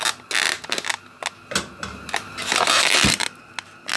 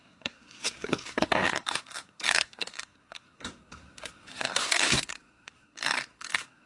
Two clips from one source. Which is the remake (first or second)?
second